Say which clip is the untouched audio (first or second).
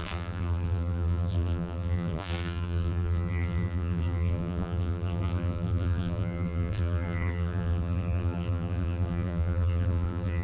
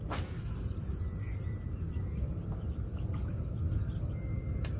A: second